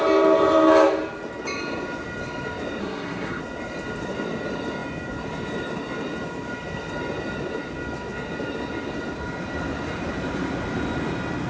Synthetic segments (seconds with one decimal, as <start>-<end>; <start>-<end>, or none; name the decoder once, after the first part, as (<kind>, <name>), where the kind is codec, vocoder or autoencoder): 2.8-3.4 (codec, SNAC)